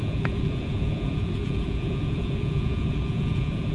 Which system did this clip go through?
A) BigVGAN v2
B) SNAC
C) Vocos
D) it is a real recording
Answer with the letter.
C